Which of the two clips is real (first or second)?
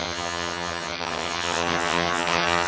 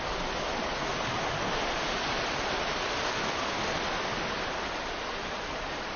second